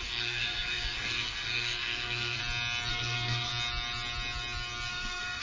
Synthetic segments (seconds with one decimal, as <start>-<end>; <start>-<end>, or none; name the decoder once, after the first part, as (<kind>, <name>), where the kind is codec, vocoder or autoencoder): 0.0-2.4 (codec, SNAC); 2.9-3.5; 4.9-5.4